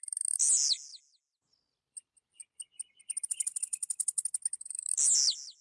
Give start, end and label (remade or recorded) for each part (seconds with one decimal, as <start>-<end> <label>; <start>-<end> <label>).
0.0-5.6 recorded